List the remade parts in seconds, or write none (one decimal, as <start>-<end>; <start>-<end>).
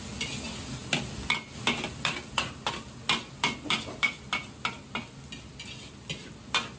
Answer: none